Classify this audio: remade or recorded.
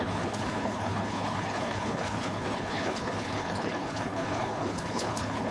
remade